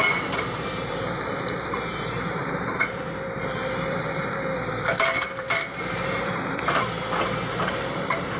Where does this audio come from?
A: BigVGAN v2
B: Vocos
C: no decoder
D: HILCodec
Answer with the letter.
A